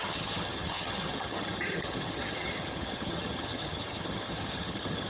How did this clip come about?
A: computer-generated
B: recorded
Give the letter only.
A